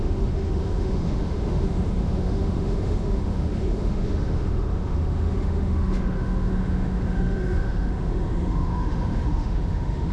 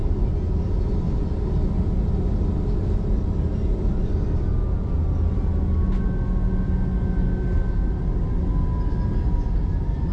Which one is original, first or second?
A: second